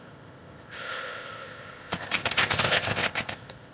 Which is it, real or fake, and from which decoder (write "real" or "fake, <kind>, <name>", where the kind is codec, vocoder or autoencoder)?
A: fake, codec, ZipCodec